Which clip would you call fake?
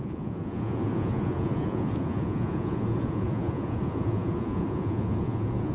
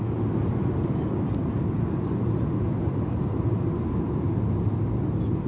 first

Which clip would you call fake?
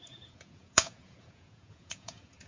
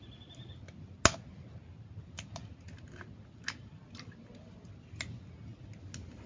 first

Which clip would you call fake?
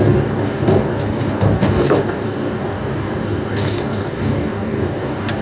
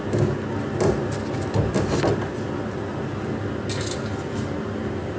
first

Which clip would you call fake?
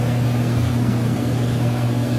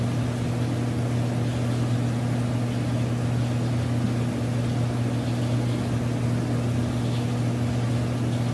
first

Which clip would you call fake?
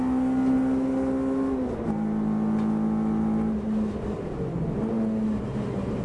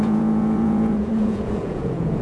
second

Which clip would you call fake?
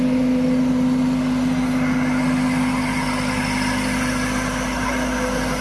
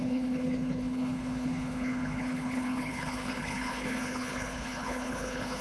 second